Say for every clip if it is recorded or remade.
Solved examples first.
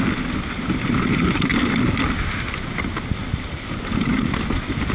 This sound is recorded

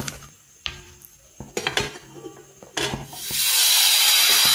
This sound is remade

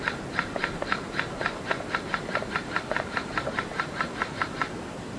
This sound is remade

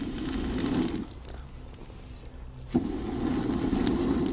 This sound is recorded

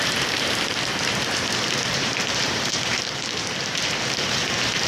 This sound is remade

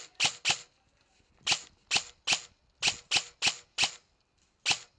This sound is recorded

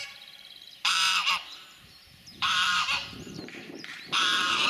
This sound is remade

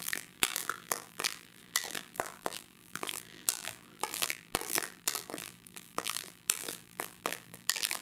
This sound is remade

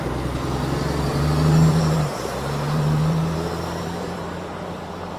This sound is remade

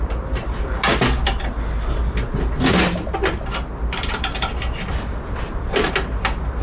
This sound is recorded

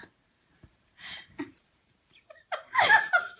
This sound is remade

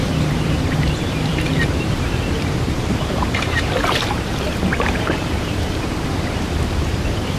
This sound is remade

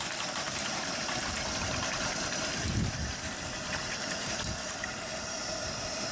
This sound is remade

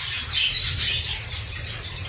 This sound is remade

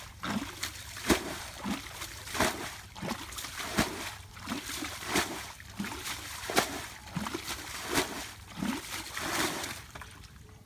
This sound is remade